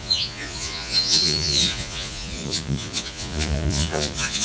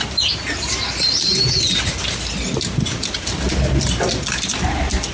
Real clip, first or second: second